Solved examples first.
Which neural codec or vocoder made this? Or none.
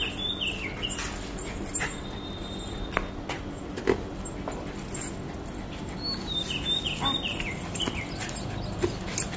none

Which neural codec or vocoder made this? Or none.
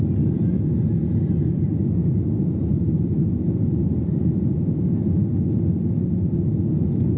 none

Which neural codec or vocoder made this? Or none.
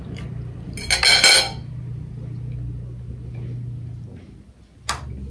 none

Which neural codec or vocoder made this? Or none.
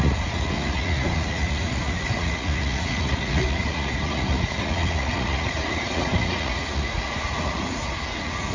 vocoder, Vocos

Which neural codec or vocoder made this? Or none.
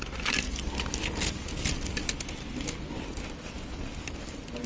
none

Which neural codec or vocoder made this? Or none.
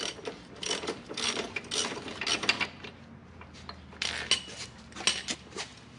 none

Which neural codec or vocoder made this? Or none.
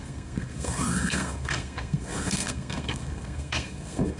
codec, SNAC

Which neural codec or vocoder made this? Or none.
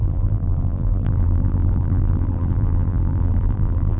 vocoder, BigVGAN v2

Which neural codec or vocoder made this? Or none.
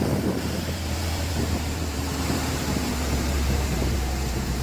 vocoder, BigVGAN v2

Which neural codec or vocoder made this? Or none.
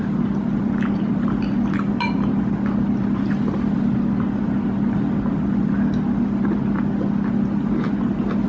none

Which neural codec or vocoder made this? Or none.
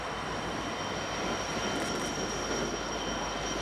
none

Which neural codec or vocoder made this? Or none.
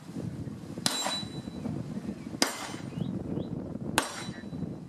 none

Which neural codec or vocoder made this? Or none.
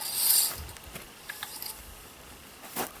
none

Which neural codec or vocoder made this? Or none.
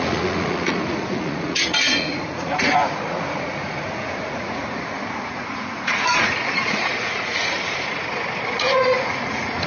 vocoder, Vocos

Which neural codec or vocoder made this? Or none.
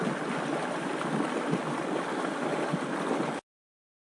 none